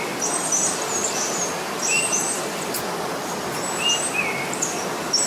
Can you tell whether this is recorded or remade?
recorded